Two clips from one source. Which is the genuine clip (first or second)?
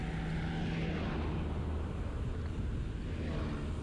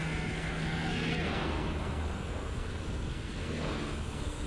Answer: first